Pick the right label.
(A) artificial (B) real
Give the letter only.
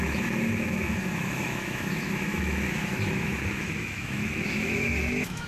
A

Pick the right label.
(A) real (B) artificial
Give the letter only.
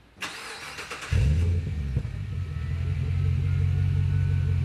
A